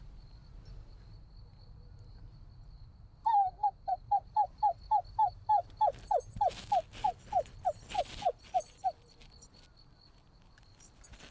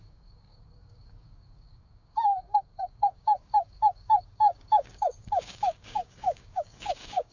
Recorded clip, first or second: first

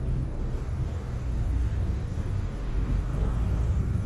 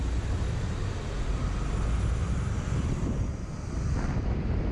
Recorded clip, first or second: second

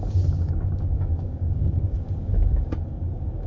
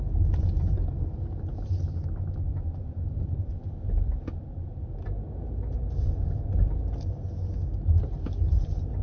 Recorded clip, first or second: second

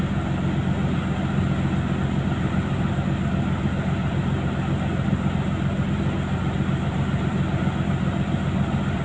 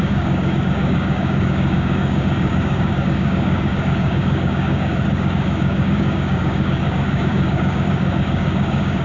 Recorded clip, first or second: first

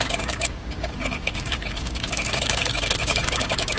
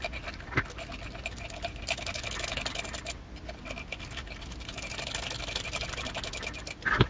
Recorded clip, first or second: second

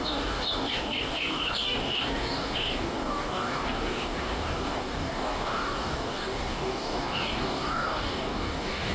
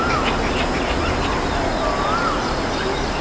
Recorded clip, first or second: second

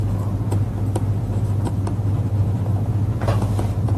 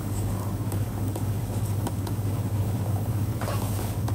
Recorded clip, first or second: first